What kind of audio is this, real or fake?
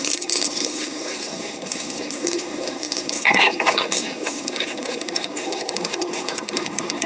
fake